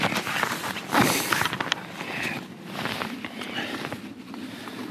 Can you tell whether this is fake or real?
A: fake